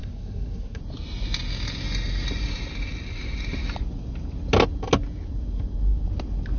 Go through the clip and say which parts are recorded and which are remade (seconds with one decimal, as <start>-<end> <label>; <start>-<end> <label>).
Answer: 0.0-0.8 remade; 0.8-6.6 recorded